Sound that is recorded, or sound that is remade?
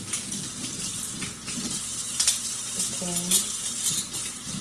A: recorded